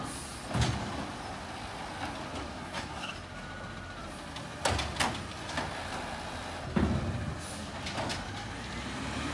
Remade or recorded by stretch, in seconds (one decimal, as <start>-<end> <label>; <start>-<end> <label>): 0.0-2.5 recorded; 2.5-3.1 remade; 3.1-9.3 recorded